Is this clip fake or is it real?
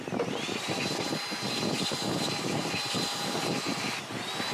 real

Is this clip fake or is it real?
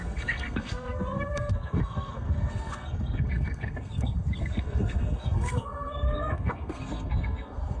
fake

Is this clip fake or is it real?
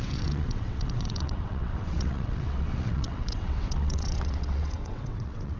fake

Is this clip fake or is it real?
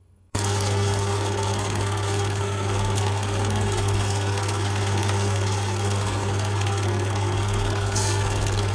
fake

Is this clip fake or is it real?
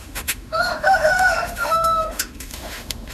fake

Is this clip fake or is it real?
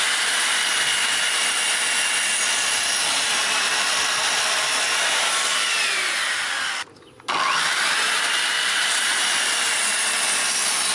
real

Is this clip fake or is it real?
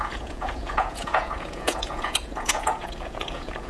fake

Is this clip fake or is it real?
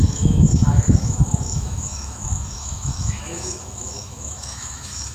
fake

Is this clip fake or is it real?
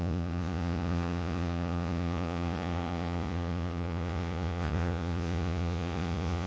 fake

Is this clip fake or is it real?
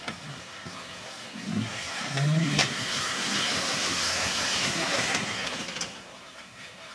fake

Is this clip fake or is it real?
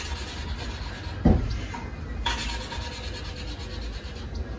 real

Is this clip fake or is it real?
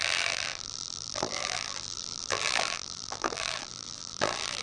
fake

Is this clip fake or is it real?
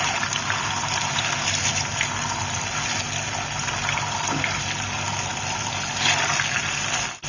real